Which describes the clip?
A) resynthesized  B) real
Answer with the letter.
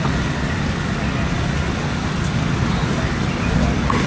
B